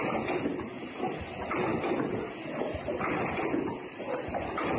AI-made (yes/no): no